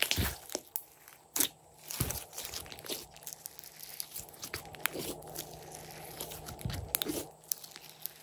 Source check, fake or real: real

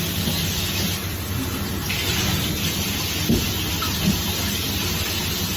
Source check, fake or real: real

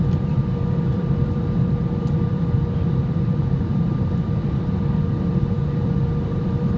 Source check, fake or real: fake